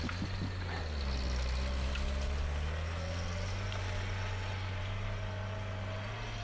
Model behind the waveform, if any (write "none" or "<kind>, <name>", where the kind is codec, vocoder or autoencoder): none